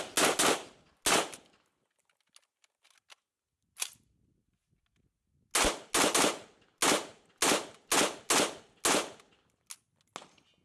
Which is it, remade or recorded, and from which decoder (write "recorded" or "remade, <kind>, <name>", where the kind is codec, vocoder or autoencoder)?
recorded